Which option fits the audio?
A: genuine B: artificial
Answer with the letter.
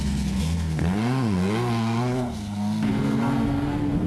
B